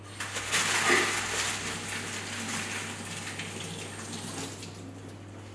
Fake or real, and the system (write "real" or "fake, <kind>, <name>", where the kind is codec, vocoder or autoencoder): real